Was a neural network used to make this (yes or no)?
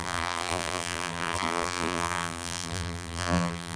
yes